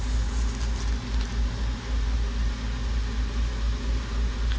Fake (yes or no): no